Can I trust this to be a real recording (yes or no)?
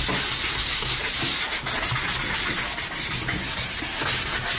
yes